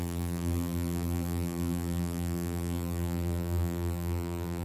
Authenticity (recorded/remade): remade